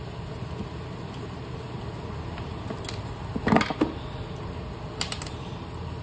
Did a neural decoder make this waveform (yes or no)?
no